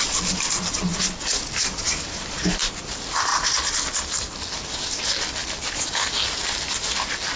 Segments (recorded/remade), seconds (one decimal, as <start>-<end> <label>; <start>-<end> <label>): 0.0-7.4 recorded